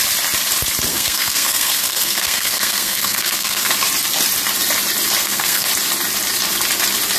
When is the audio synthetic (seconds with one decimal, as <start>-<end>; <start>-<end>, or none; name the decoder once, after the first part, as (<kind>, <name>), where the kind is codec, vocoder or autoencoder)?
0.9-3.7 (codec, SNAC); 5.2-5.7

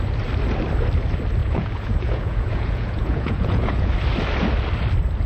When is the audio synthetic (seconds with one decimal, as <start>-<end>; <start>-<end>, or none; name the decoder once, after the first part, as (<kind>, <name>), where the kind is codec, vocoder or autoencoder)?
1.4-3.9 (vocoder, Vocos)

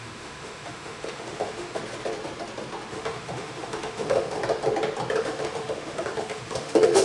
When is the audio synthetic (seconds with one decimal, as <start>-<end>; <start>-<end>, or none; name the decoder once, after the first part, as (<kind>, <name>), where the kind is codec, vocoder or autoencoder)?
0.0-1.8 (autoencoder, DAC-VAE); 2.9-4.4; 5.2-7.0

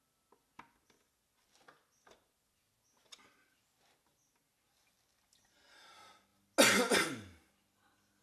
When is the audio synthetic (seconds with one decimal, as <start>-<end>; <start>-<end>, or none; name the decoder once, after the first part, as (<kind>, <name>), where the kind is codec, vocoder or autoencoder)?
none